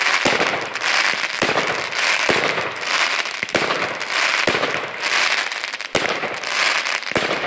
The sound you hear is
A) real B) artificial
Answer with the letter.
A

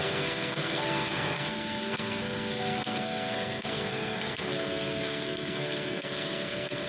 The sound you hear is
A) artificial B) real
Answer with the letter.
A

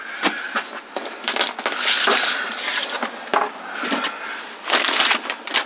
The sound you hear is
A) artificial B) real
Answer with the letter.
B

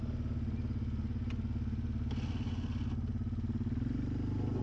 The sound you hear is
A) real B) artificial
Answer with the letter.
A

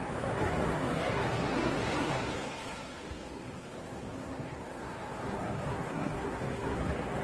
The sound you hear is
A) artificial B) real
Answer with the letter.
A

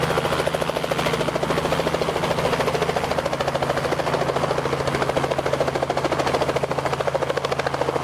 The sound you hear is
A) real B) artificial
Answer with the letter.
A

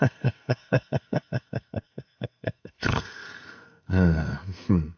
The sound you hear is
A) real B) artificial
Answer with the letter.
B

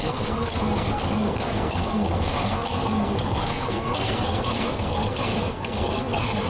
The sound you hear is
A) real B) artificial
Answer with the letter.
B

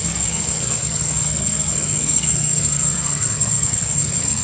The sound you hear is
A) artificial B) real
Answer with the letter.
A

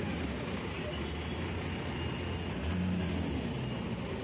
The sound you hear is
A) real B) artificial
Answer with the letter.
A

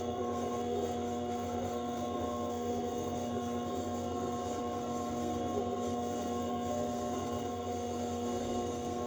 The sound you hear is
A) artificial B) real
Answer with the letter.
A